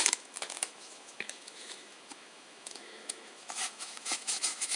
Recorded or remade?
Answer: remade